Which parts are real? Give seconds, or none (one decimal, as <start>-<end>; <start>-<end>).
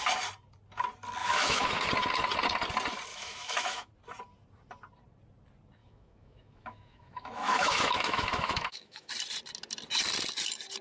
0.0-1.2; 1.9-3.1; 3.9-5.8; 9.1-10.8